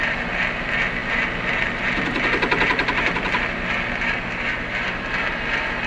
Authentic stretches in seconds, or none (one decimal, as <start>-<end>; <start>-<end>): 0.0-5.9